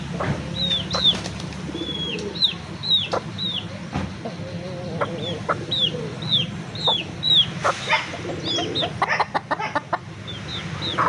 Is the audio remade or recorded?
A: recorded